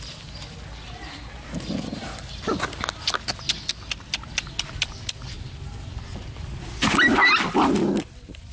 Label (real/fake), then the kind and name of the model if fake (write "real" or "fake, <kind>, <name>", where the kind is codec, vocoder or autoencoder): real